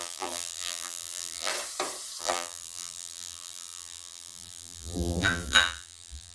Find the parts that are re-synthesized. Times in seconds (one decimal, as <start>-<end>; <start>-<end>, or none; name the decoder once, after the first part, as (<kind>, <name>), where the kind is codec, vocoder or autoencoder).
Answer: 0.0-1.5 (vocoder, BigVGAN v2); 2.2-6.3